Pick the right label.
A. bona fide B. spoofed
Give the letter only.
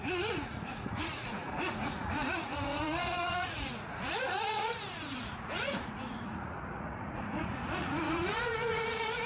B